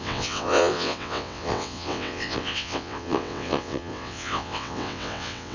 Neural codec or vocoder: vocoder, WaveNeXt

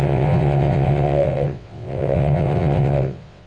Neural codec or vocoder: vocoder, WaveNeXt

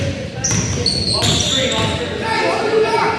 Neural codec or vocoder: none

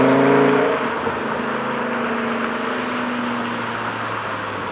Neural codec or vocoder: none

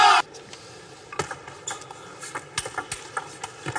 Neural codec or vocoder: none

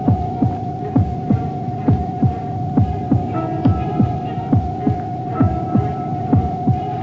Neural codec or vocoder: none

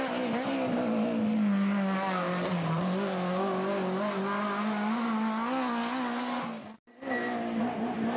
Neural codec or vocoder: none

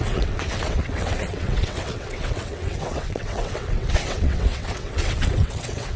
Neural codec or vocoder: vocoder, WaveNeXt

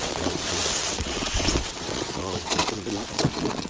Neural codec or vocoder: vocoder, WaveNeXt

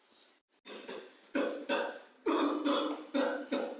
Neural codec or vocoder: none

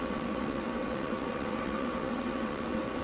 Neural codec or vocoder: vocoder, WaveNeXt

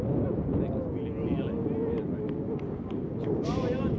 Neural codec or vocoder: none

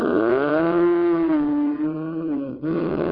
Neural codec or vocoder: vocoder, WaveNeXt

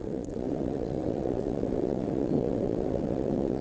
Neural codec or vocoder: vocoder, WaveNeXt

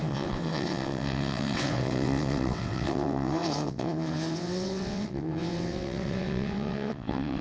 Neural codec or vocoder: vocoder, WaveNeXt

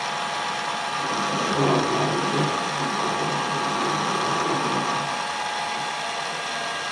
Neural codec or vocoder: none